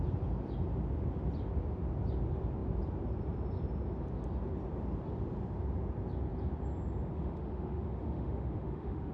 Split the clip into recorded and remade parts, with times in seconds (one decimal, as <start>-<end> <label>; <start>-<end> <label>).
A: 0.0-7.1 recorded; 7.1-9.1 remade